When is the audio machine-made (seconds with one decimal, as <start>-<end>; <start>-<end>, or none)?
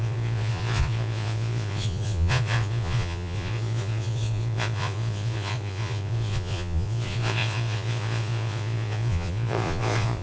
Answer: 0.0-10.2